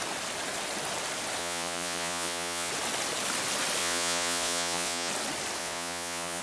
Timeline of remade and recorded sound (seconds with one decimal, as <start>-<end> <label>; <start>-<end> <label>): 0.0-1.4 recorded; 1.4-2.7 remade; 2.7-3.8 recorded; 3.8-5.1 remade; 5.1-5.6 recorded; 5.6-6.4 remade